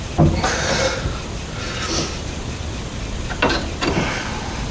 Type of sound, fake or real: real